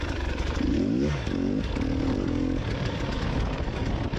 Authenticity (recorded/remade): remade